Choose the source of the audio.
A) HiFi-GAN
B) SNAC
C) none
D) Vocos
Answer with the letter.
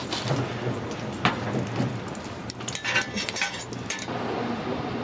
C